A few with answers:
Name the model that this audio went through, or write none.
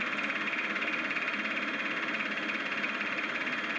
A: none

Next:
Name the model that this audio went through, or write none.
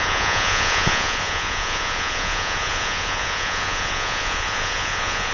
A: vocoder, Vocos